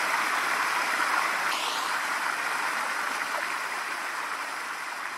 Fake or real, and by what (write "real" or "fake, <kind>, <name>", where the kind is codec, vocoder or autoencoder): real